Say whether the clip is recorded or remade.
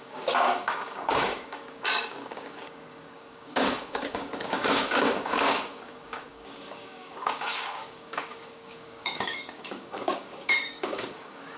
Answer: remade